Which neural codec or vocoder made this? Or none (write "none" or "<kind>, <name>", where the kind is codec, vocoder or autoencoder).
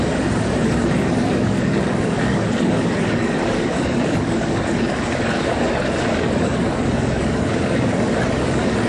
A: codec, DAC